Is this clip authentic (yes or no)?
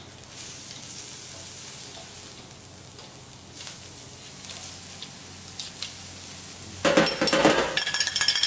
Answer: yes